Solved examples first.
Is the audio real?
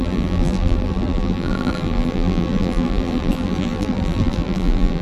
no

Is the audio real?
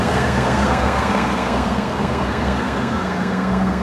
no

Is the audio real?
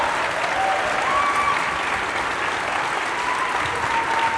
yes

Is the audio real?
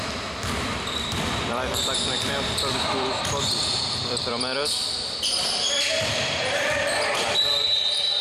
no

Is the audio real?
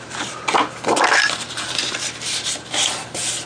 yes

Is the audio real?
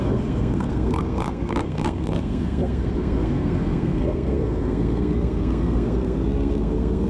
no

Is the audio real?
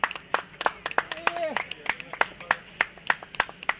yes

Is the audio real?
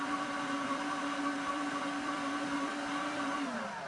no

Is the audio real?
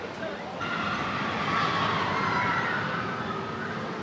yes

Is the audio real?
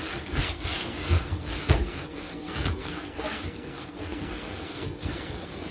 no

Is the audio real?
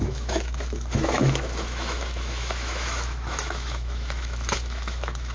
no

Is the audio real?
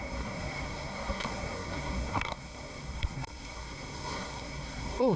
no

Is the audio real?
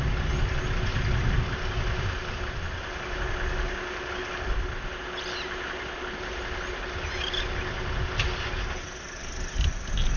yes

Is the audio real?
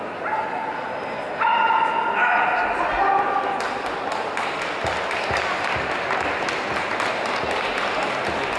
yes